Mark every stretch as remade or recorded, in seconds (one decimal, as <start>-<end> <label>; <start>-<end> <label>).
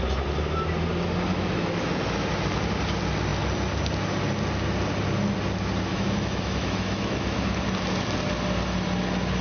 0.0-1.3 recorded; 1.3-1.9 remade; 1.9-5.9 recorded; 5.9-7.6 remade; 7.6-9.4 recorded